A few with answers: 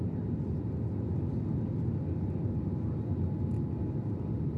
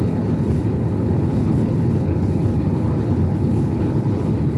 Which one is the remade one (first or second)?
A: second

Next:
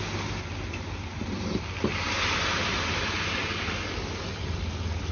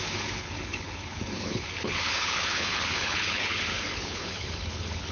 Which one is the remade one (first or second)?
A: second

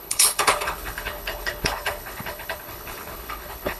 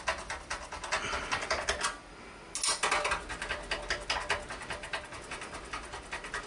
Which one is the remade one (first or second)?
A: first